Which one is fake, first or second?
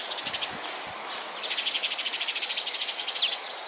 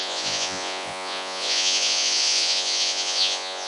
second